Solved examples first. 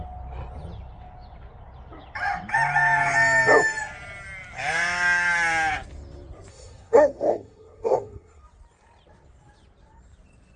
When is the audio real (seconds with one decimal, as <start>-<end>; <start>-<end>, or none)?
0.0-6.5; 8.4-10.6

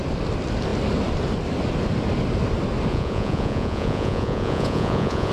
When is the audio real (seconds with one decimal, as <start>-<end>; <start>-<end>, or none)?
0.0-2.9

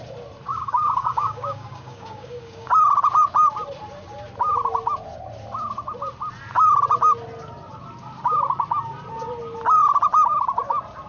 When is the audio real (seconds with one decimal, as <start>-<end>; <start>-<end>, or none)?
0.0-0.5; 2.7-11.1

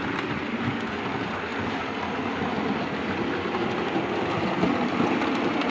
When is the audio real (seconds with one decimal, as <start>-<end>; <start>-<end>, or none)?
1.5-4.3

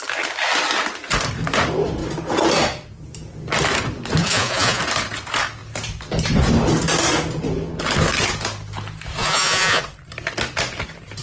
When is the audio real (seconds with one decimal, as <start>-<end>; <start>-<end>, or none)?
0.0-4.2; 4.8-9.2; 9.8-11.2

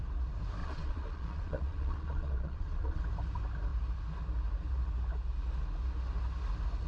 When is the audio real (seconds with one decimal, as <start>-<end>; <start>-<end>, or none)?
0.0-0.6; 3.0-6.9